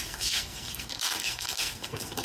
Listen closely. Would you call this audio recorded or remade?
remade